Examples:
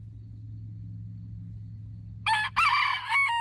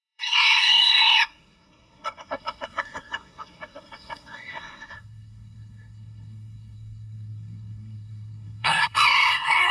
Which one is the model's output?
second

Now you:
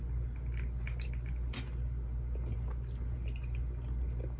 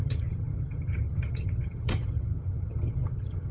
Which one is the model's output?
second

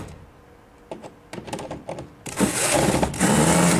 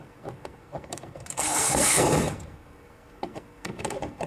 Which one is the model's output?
second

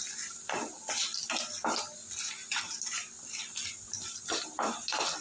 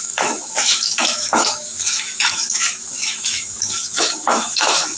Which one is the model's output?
second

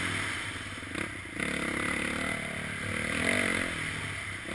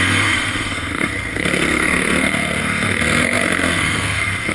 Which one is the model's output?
second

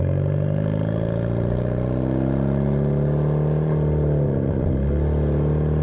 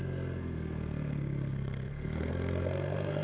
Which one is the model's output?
second